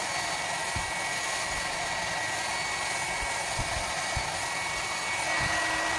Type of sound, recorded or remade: recorded